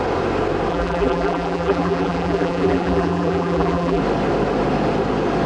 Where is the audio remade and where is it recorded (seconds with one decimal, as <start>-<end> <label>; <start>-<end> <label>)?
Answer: 0.0-0.7 recorded; 0.7-4.0 remade; 4.0-5.5 recorded